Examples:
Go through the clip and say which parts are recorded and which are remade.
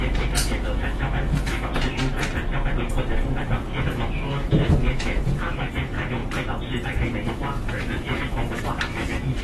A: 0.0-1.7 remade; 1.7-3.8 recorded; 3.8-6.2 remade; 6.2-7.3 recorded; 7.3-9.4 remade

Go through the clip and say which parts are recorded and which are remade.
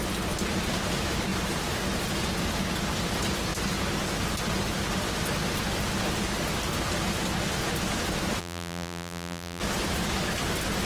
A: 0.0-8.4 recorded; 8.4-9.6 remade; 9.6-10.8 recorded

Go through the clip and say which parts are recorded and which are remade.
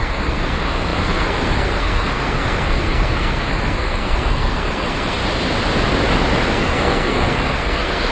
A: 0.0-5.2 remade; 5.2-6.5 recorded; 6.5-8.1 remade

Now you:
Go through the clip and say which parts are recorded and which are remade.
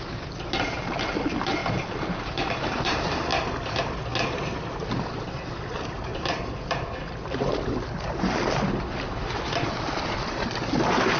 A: 0.0-1.6 recorded; 1.6-2.3 remade; 2.3-6.1 recorded; 6.1-10.5 remade; 10.5-11.2 recorded